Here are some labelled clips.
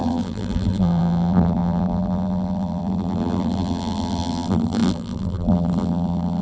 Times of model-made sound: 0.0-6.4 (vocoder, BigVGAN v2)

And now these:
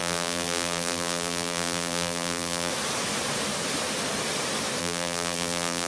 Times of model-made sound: 0.0-2.7 (vocoder, BigVGAN v2); 4.8-5.9

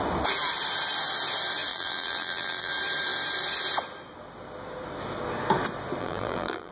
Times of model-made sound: 1.7-2.7 (vocoder, BigVGAN v2); 6.0-6.7

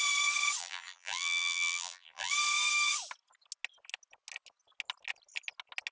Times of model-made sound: 0.6-2.3 (vocoder, BigVGAN v2)

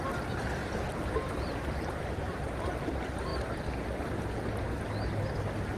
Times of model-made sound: 0.6-2.8 (vocoder, BigVGAN v2)